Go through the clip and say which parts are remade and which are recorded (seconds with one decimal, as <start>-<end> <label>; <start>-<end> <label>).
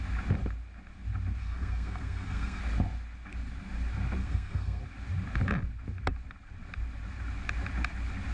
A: 0.0-1.4 recorded; 1.4-2.6 remade; 2.6-4.2 recorded; 4.2-4.8 remade; 4.8-8.3 recorded